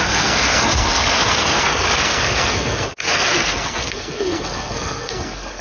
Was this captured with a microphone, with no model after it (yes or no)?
no